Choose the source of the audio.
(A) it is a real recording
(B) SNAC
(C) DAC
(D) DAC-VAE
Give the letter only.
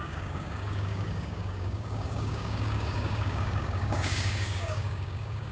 C